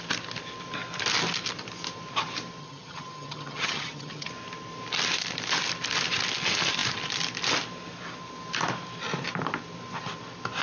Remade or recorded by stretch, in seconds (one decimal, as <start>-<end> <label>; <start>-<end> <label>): 0.0-2.6 recorded; 2.6-4.3 remade; 4.3-10.6 recorded